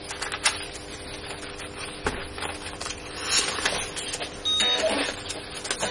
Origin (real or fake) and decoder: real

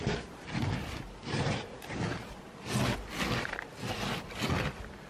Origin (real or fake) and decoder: real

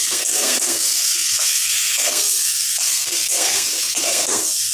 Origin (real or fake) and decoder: fake, codec, SNAC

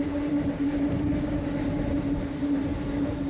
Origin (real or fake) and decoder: real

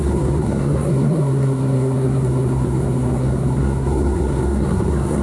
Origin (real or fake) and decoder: fake, codec, SNAC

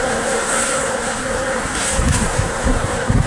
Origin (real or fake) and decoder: fake, codec, SNAC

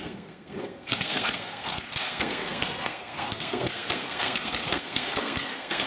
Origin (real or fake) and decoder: fake, codec, SNAC